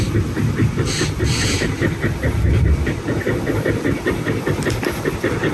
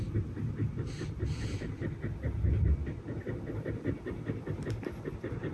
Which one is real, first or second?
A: second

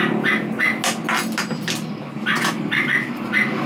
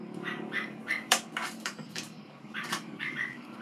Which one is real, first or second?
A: first